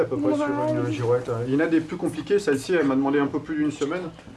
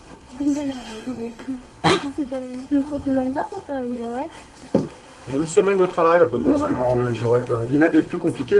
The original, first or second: first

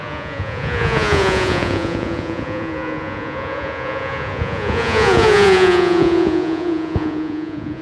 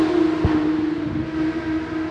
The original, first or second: second